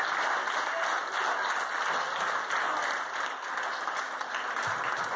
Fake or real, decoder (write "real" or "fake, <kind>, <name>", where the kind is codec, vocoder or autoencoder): real